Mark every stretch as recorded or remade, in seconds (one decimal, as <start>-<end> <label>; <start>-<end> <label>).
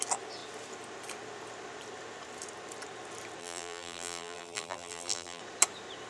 0.0-3.4 recorded; 3.4-5.4 remade; 5.4-6.1 recorded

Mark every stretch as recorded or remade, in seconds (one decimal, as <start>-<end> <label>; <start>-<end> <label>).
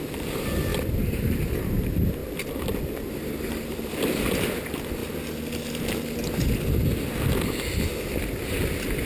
0.0-0.7 recorded; 0.7-1.6 remade; 1.6-2.2 recorded; 2.2-3.9 remade; 3.9-9.1 recorded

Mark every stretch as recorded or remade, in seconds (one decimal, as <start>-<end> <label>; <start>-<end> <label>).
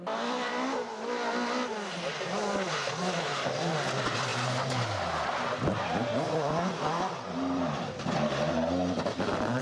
0.0-9.6 recorded